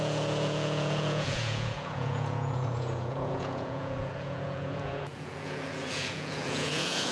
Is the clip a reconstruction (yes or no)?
yes